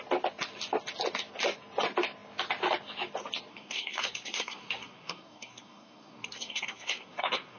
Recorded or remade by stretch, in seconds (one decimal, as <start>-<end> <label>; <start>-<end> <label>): 0.0-3.5 recorded; 3.5-7.6 remade